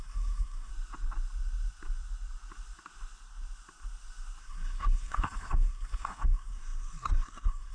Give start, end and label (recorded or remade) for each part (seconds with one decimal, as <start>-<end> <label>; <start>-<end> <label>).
0.0-0.7 remade; 0.7-4.4 recorded; 4.4-7.7 remade